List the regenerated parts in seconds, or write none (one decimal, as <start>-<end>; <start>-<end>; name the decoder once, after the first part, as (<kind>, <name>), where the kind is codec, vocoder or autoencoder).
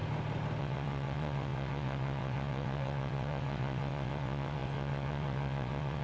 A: 0.6-6.0 (vocoder, WaveNeXt)